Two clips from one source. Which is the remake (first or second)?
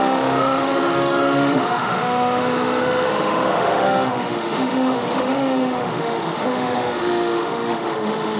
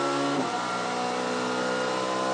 first